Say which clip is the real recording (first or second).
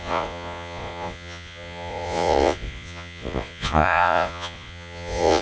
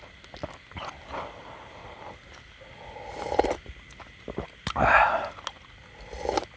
second